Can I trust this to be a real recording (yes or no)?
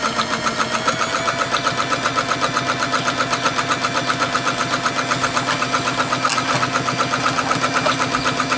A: yes